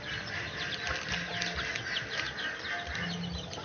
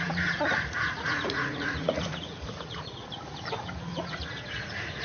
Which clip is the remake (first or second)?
second